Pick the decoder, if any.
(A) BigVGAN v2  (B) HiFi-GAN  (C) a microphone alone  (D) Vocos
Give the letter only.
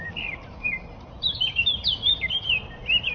A